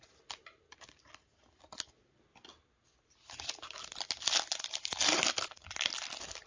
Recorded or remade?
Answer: recorded